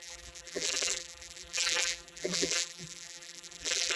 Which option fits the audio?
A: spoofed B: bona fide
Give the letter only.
A